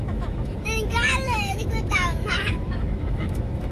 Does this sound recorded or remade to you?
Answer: remade